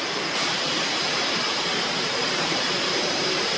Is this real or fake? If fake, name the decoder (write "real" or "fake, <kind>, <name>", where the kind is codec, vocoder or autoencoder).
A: fake, vocoder, BigVGAN v2